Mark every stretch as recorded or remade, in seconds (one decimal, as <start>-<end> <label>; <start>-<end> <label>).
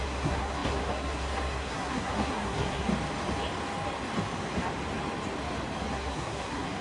0.0-2.9 remade; 2.9-5.9 recorded; 5.9-6.8 remade